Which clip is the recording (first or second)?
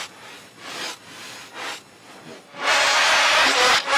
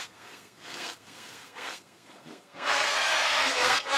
first